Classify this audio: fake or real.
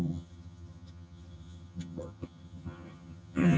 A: fake